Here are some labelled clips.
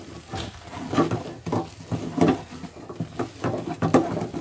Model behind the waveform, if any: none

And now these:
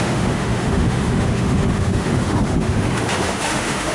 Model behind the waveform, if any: autoencoder, DAC-VAE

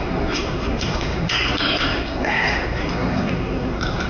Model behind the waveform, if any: codec, SNAC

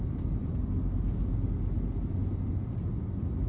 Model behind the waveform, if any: none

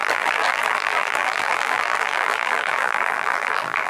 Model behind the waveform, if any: vocoder, BigVGAN v2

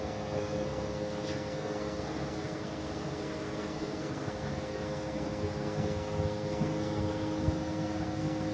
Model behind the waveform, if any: codec, SNAC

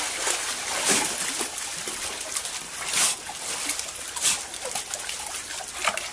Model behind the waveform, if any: none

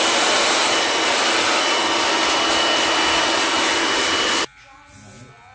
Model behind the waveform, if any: none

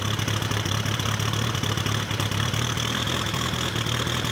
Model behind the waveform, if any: vocoder, BigVGAN v2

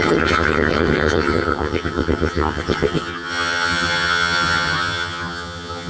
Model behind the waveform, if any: vocoder, HiFi-GAN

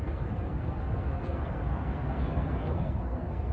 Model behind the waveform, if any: codec, SNAC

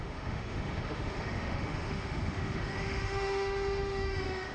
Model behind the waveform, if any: autoencoder, DAC-VAE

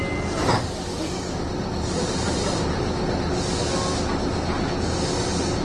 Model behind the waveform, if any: none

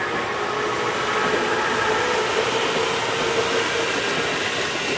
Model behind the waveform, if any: none